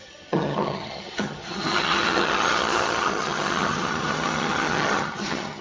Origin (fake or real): fake